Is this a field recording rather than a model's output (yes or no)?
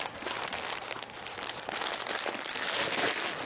yes